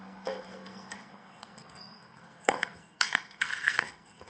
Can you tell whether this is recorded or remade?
remade